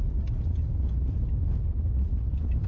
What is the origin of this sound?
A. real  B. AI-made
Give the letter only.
B